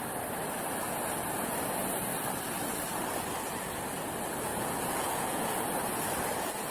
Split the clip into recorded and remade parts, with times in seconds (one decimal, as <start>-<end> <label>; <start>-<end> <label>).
0.0-4.5 recorded; 4.5-6.0 remade; 6.0-6.7 recorded